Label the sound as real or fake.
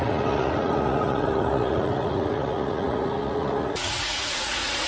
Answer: fake